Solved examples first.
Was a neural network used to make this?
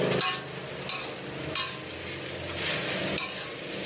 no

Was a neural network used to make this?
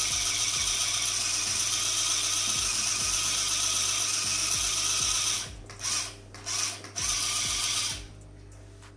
no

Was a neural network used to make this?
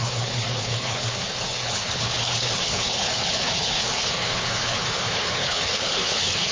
yes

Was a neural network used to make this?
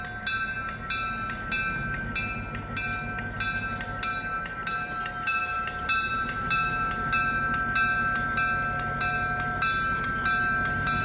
no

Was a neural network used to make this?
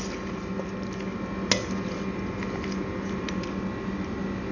no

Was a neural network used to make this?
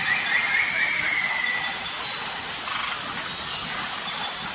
no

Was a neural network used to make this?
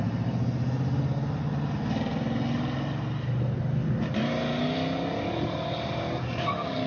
no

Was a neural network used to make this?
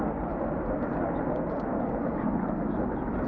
no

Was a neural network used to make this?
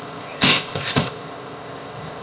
yes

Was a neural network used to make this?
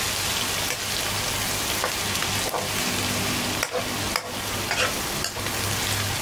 no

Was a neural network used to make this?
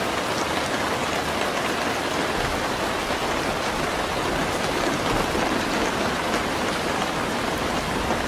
no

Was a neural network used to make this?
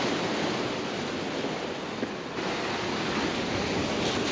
no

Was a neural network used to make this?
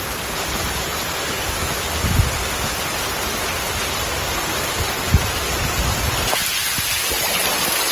no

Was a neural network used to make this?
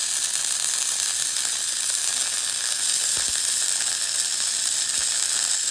no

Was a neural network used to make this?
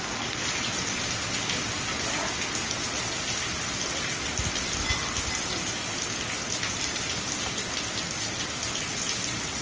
no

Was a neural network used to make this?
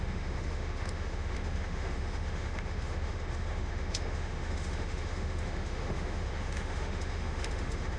yes